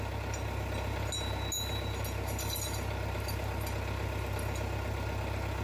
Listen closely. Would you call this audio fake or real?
real